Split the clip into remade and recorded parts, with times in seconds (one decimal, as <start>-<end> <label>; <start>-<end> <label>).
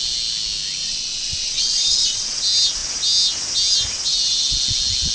0.0-0.8 recorded; 0.8-2.4 remade; 2.4-5.1 recorded